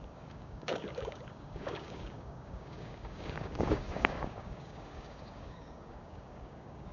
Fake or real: fake